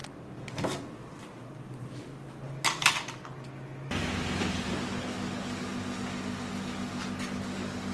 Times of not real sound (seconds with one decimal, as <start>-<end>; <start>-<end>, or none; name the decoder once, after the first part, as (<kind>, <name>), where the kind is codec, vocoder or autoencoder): 0.0-4.7 (vocoder, BigVGAN v2)